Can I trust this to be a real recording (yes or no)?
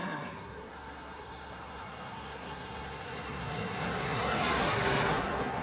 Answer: no